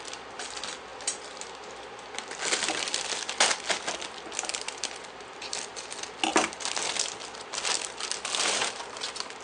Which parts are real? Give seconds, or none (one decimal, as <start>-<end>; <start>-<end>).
0.0-9.4